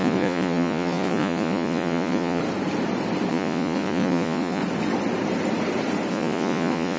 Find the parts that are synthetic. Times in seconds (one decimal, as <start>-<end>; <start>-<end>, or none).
0.0-2.4; 3.3-4.6; 6.1-7.0